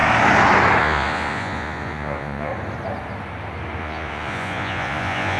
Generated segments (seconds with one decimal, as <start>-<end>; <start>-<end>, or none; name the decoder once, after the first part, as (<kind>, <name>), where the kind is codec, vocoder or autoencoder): 0.8-2.5 (vocoder, Vocos); 3.8-5.4